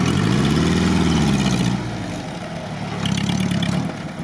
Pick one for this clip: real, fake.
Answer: real